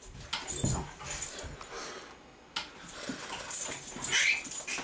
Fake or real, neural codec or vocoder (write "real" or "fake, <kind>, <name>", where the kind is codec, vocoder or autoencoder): real